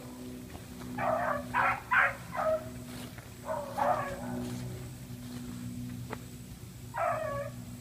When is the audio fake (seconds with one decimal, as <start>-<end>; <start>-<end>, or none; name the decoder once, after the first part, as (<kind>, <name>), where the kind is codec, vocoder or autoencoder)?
none